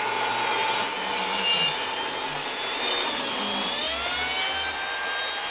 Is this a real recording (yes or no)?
yes